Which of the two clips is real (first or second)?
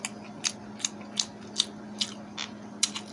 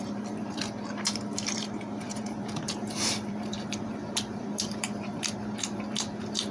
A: first